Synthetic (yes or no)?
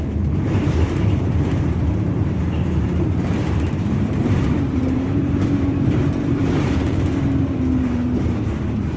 yes